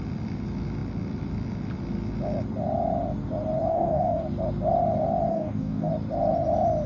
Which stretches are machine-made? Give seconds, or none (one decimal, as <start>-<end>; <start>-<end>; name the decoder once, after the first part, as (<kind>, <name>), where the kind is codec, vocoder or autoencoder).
3.7-4.2 (codec, DAC); 5.3-5.9